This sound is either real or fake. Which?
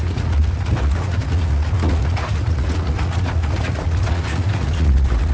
fake